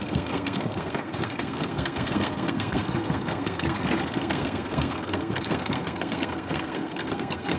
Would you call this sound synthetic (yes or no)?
yes